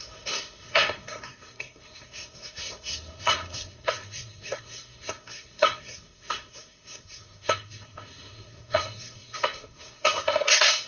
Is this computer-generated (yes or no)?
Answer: yes